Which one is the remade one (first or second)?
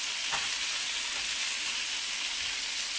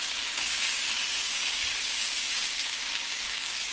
second